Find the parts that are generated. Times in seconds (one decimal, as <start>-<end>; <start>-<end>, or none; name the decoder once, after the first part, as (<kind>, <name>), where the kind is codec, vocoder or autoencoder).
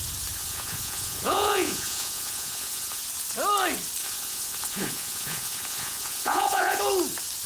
0.4-3.0 (vocoder, Vocos); 4.0-6.8